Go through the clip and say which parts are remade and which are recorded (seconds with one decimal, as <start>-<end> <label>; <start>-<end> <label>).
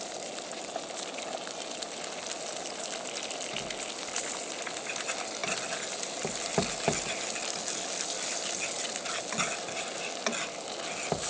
0.0-11.3 recorded